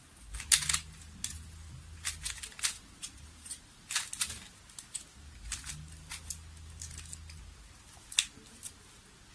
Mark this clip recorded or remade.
recorded